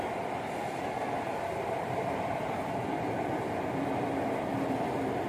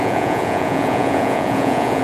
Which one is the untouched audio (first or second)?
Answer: first